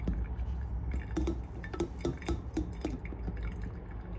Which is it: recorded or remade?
recorded